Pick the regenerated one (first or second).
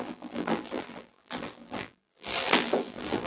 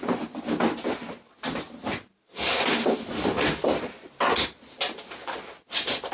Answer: first